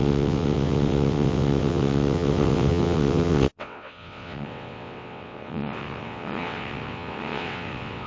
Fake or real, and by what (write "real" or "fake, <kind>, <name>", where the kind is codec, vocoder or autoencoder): fake, vocoder, WaveNeXt